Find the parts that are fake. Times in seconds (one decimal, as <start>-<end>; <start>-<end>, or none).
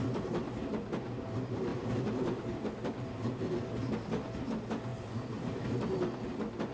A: 1.7-3.0